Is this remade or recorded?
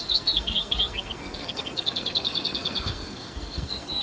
remade